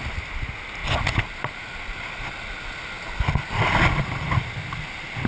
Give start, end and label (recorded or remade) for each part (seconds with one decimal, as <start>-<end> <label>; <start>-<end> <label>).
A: 0.0-5.3 recorded